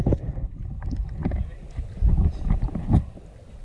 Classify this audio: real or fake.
real